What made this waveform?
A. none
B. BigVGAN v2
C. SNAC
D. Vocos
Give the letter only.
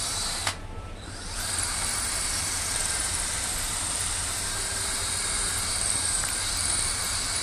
B